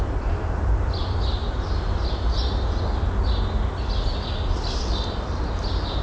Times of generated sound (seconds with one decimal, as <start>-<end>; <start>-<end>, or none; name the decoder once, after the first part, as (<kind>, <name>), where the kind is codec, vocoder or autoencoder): none